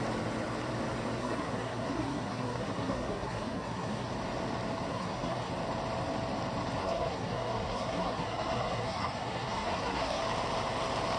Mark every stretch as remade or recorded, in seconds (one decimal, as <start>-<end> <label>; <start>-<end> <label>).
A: 0.0-1.2 recorded; 1.2-4.1 remade; 4.1-4.9 recorded; 4.9-5.5 remade; 5.5-6.8 recorded; 6.8-10.2 remade; 10.2-11.2 recorded